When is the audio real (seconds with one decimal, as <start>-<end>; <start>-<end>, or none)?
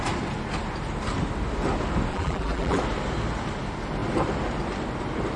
0.0-2.1; 2.8-5.4